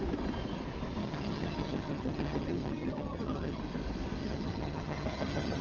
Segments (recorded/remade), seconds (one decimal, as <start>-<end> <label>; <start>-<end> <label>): 0.0-1.0 recorded; 1.0-3.6 remade; 3.6-4.2 recorded; 4.2-5.6 remade